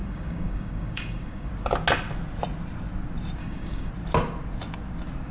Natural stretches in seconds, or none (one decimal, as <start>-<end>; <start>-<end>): 1.5-3.4; 3.9-5.3

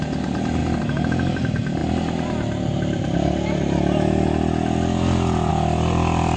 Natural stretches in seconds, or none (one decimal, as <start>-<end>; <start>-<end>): 0.0-6.4

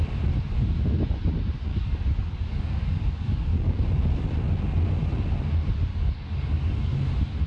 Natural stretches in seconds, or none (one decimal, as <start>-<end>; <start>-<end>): 0.0-1.7; 3.8-5.9; 7.0-7.5

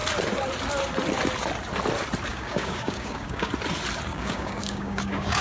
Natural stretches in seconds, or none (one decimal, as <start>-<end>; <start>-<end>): 0.0-2.3; 3.5-4.1

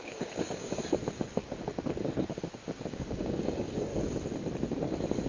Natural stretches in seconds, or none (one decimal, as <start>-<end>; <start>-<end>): 0.8-2.9; 3.9-5.3

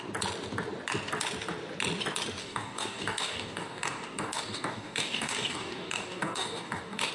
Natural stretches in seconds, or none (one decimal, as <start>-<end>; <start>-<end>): 0.0-2.4